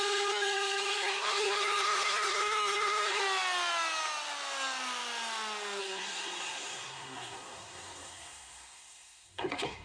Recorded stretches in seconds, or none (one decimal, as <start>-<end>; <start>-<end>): 3.2-5.8